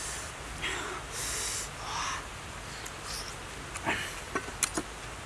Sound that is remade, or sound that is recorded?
recorded